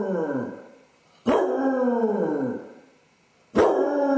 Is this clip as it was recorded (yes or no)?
yes